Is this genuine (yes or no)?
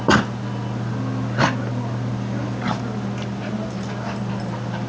yes